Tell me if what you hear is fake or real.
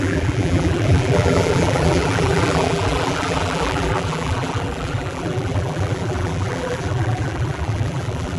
fake